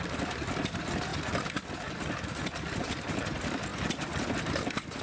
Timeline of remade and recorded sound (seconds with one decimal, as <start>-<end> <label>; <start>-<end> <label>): 0.0-1.1 remade; 1.1-2.8 recorded; 2.8-3.7 remade; 3.7-5.0 recorded